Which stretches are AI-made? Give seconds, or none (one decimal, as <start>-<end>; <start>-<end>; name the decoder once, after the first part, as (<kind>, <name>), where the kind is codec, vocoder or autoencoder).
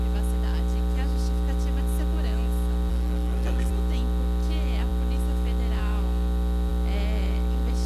2.9-3.7 (codec, SNAC)